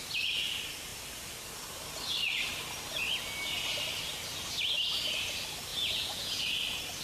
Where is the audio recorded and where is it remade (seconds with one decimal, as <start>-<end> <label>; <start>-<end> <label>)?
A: 0.0-5.7 recorded; 5.7-6.4 remade; 6.4-7.0 recorded

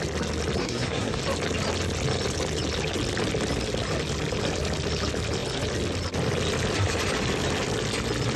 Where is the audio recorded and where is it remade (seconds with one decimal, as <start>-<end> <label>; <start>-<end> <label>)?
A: 0.0-0.6 recorded; 0.6-1.2 remade; 1.2-8.4 recorded

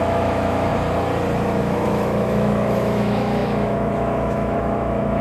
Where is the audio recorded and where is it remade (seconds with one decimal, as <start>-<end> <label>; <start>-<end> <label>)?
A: 0.0-0.7 remade; 0.7-1.6 recorded; 1.6-5.2 remade

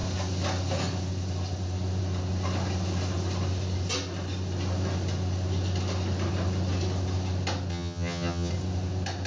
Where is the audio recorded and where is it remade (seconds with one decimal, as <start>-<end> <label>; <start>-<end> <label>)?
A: 0.0-7.7 recorded; 7.7-8.5 remade; 8.5-9.3 recorded